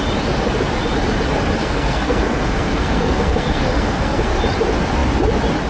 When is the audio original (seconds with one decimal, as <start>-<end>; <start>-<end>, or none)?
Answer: 0.0-1.6; 4.4-5.7